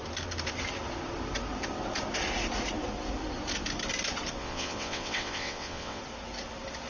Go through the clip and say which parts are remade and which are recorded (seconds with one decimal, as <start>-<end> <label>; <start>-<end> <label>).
0.0-4.4 recorded; 4.4-6.0 remade; 6.0-6.9 recorded